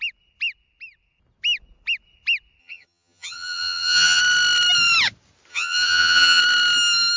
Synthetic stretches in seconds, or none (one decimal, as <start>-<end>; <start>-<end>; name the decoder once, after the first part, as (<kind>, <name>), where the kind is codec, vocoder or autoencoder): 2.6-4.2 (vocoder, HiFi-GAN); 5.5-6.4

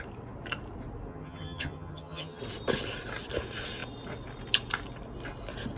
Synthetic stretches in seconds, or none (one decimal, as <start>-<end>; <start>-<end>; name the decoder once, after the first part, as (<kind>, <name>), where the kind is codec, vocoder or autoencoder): 1.1-2.4 (vocoder, HiFi-GAN)

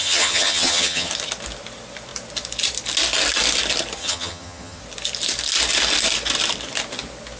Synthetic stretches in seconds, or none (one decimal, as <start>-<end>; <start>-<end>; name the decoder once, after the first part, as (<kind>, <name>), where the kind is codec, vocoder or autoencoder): 0.0-1.1 (vocoder, HiFi-GAN); 4.0-4.8